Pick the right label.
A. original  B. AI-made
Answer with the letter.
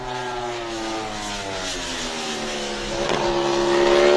A